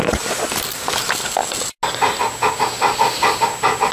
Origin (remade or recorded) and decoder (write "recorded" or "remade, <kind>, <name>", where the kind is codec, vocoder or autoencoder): recorded